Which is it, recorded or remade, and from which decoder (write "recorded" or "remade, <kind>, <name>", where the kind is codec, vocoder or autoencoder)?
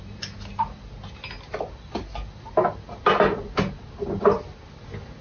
recorded